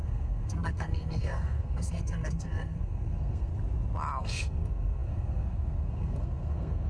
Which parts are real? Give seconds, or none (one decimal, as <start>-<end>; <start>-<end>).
3.5-4.2